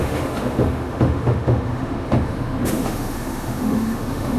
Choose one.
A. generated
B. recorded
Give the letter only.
A